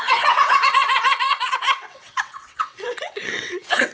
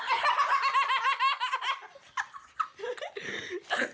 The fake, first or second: first